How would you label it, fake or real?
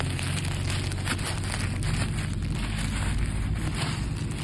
real